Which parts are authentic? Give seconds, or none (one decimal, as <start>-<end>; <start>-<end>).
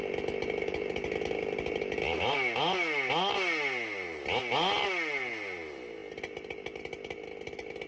0.0-7.9